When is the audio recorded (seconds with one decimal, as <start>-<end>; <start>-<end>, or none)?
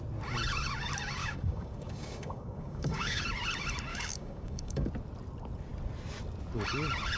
0.0-1.2; 3.2-3.9; 4.9-7.2